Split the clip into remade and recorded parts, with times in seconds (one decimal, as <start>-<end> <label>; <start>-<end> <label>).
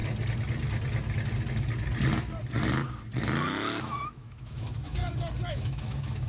0.0-3.8 recorded; 3.8-5.0 remade; 5.0-5.5 recorded; 5.5-6.3 remade